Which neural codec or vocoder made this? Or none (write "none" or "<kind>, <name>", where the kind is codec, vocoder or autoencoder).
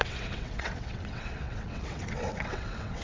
vocoder, WaveNeXt